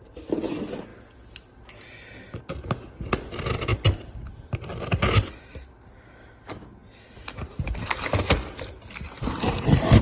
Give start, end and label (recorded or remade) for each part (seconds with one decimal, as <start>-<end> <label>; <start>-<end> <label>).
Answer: 0.0-10.0 recorded